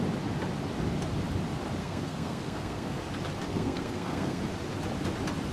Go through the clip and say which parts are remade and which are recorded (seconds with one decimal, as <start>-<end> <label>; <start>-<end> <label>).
0.0-1.8 recorded; 1.8-3.0 remade; 3.0-3.5 recorded; 3.5-4.4 remade; 4.4-5.5 recorded